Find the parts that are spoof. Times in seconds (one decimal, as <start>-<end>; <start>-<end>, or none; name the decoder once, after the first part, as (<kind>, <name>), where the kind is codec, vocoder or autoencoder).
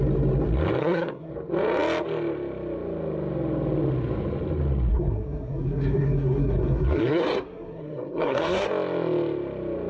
0.8-1.3 (codec, SNAC); 4.9-8.7